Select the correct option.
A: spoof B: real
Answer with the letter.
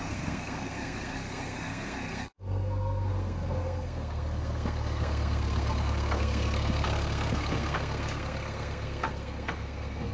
A